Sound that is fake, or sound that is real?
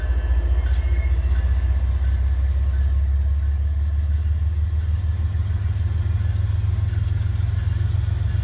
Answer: real